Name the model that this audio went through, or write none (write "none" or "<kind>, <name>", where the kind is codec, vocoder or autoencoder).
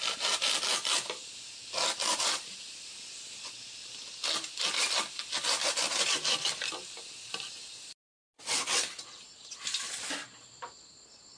none